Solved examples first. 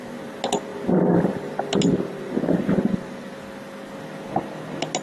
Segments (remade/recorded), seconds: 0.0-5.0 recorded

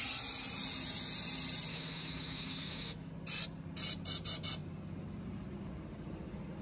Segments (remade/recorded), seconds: 0.0-1.7 recorded; 1.7-3.1 remade; 3.1-6.6 recorded

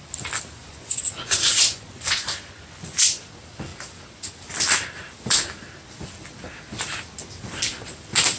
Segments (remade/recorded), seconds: 0.0-0.6 recorded; 0.6-3.3 remade; 3.3-8.4 recorded

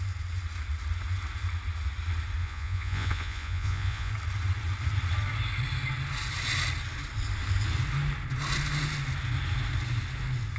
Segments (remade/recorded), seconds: 0.0-2.4 recorded; 2.4-4.1 remade; 4.1-10.6 recorded